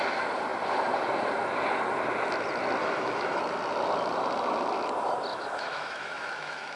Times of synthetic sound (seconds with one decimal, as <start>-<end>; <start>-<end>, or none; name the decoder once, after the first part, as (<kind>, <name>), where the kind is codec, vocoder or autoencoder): 2.8-3.4 (autoencoder, DAC-VAE); 5.3-6.8